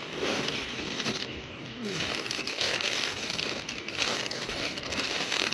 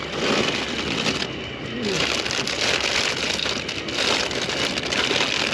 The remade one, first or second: first